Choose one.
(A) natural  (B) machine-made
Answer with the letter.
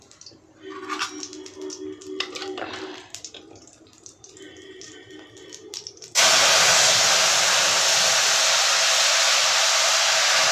A